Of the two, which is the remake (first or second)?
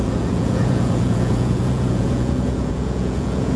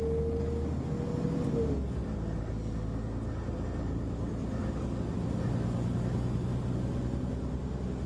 first